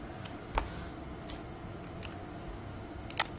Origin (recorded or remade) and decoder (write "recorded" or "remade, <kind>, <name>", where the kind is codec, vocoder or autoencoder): recorded